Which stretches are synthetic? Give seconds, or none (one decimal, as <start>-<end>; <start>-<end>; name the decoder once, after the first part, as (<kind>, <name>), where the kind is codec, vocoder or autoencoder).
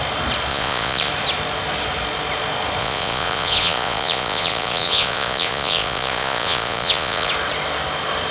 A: 0.5-1.1 (vocoder, Vocos); 2.8-7.3